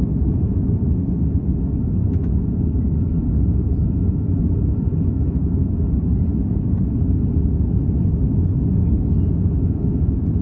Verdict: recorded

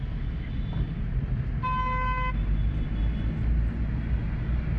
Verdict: recorded